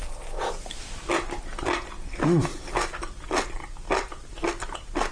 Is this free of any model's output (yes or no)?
yes